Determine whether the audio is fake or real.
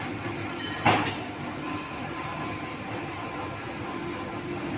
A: fake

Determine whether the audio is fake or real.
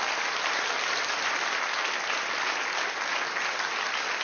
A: real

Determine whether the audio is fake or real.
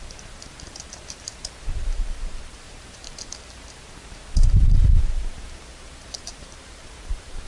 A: fake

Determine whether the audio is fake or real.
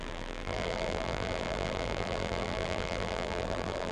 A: fake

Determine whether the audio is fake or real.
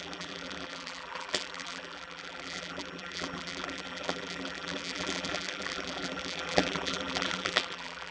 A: fake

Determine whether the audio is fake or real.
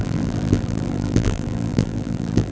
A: fake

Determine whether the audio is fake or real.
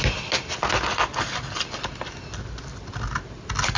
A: real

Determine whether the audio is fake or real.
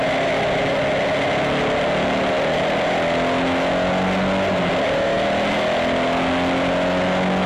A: real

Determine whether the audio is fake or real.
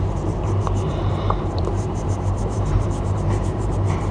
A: fake